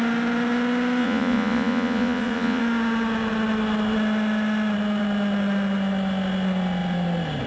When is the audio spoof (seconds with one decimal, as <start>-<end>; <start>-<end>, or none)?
1.0-2.6